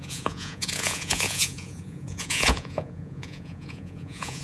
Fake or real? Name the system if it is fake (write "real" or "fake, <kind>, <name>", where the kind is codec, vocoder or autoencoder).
fake, vocoder, Vocos